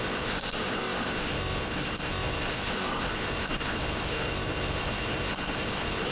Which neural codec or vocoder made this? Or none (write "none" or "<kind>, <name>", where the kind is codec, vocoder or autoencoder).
codec, SNAC